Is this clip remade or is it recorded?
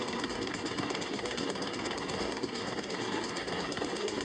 remade